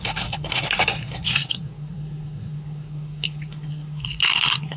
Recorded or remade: remade